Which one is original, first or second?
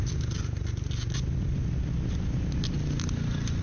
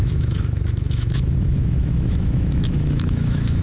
first